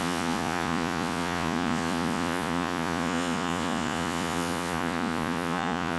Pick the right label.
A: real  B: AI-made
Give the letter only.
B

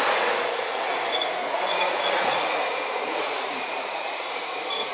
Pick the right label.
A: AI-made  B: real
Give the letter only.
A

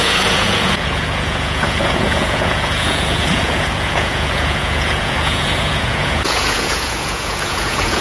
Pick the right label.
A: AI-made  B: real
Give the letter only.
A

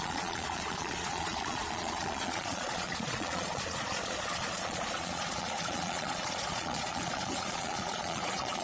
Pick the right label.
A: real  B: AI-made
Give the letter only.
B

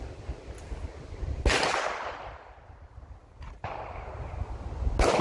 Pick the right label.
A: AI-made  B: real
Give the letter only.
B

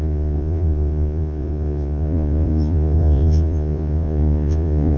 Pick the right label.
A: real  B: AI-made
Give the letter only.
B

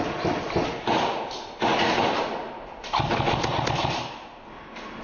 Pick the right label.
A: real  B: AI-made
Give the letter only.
A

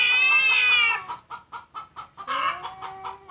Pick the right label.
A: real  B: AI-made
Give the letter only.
A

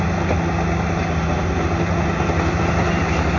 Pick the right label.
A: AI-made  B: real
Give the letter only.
B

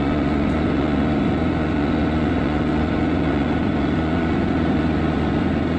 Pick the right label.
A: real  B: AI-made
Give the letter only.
B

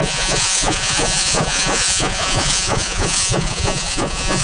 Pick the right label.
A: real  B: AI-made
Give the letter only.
B